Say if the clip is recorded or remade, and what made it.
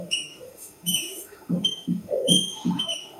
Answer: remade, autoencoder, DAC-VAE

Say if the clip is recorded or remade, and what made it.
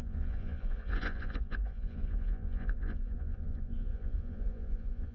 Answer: remade, vocoder, Vocos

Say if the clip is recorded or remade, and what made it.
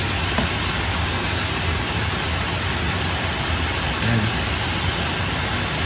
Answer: recorded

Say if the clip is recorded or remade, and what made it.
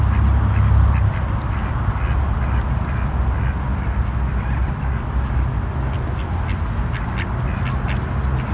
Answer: recorded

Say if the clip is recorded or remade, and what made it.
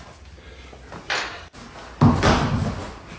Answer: recorded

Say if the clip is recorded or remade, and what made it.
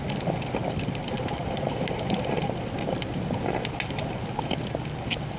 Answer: recorded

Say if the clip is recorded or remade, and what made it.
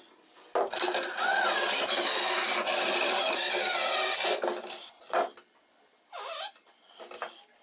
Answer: recorded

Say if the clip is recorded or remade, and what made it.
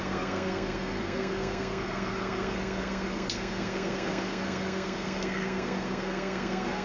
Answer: remade, codec, SNAC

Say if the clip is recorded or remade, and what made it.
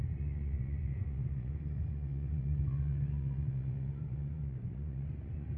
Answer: remade, vocoder, Vocos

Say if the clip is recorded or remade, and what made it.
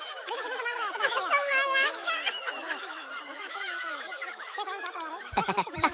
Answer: remade, autoencoder, DAC-VAE